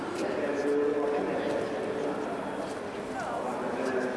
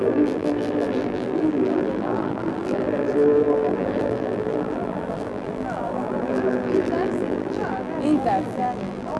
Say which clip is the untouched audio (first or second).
first